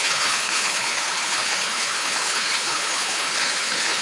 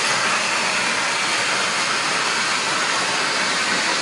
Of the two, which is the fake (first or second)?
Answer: first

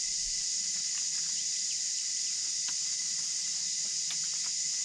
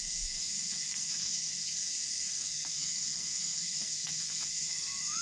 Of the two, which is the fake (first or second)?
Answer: second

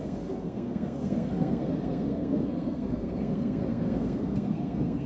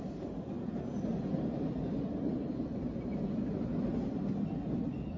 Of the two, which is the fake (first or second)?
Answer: first